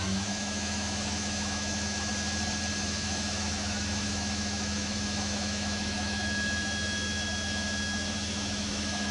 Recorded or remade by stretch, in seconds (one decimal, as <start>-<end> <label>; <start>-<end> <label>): 0.0-2.1 remade; 2.1-2.8 recorded; 2.8-9.1 remade